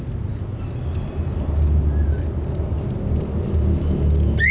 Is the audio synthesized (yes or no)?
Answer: no